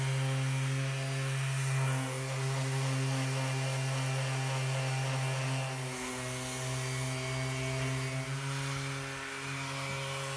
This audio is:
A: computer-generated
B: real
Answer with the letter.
B